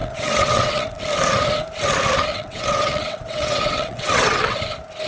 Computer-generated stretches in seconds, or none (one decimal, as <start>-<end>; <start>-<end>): 0.0-1.0; 2.3-4.6